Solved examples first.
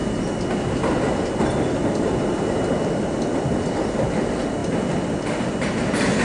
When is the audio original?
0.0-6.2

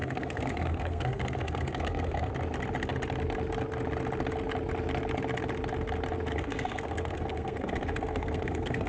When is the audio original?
2.3-6.3

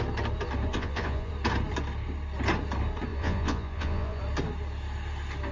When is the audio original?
0.0-0.7; 1.3-3.1; 4.2-5.5

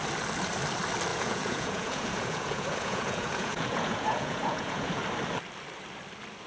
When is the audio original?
0.0-1.1; 5.0-6.5

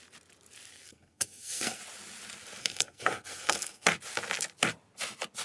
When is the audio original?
0.0-0.7; 1.8-2.6; 3.9-5.4

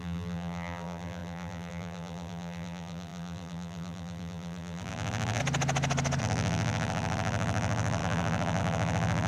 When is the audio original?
5.4-6.2